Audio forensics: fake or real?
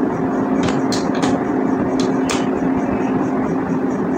real